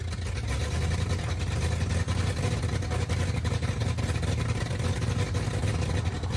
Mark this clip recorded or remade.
recorded